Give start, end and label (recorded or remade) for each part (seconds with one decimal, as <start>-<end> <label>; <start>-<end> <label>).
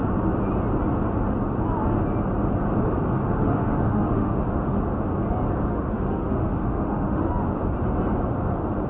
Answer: 0.0-3.2 recorded; 3.2-4.8 remade; 4.8-5.7 recorded; 5.7-7.3 remade; 7.3-8.9 recorded